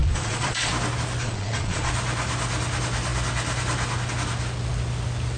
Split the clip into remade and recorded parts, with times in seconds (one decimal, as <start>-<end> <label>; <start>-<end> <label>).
0.0-0.7 remade; 0.7-1.2 recorded; 1.2-1.9 remade; 1.9-5.4 recorded